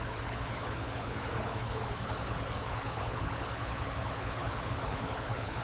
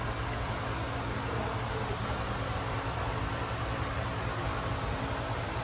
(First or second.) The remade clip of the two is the first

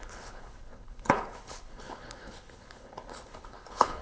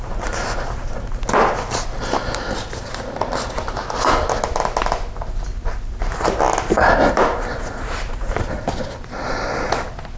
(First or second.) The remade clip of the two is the first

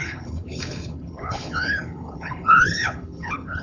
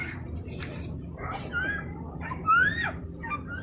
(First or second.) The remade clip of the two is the first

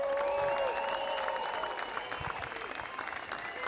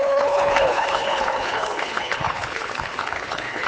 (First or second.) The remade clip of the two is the second